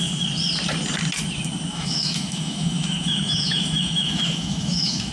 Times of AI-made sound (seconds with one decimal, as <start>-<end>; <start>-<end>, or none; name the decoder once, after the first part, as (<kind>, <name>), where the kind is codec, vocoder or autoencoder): 1.7-5.1 (autoencoder, DAC-VAE)

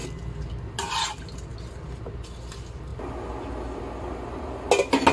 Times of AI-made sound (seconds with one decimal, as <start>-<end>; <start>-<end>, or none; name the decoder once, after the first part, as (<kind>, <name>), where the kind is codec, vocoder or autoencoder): none